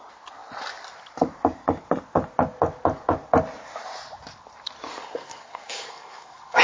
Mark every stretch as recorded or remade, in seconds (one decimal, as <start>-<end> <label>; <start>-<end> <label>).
0.0-4.9 recorded; 4.9-6.6 remade